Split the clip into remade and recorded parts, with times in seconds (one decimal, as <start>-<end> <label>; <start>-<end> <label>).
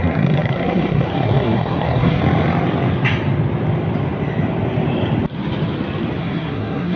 0.0-2.2 remade; 2.2-6.2 recorded; 6.2-7.0 remade